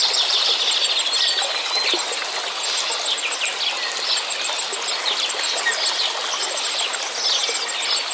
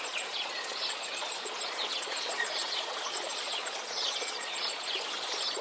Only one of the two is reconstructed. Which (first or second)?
second